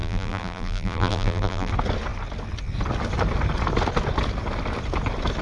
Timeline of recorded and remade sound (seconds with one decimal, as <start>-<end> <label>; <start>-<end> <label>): 0.0-1.7 remade; 1.7-5.4 recorded